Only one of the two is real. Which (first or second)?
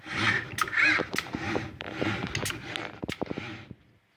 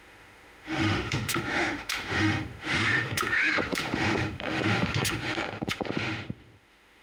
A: first